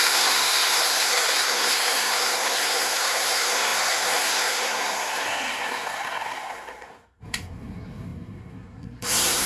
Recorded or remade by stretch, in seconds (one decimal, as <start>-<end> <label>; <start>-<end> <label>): 0.0-9.5 remade